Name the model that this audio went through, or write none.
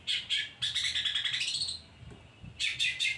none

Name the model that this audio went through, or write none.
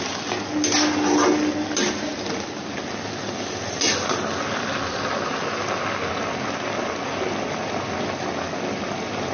none